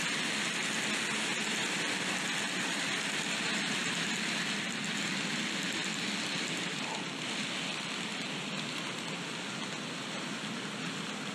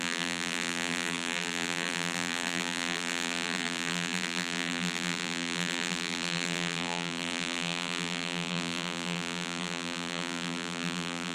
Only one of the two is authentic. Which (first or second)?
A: first